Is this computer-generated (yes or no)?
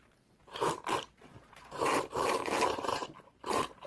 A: yes